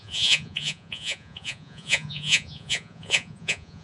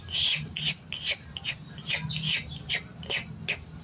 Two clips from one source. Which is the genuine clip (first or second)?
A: second